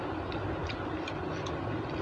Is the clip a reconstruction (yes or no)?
no